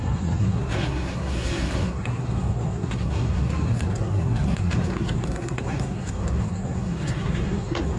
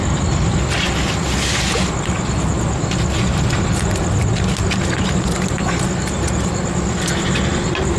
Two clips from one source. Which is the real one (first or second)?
second